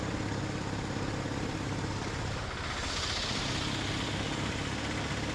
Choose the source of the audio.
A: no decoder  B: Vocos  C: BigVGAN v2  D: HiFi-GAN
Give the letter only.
A